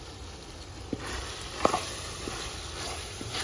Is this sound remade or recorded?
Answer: recorded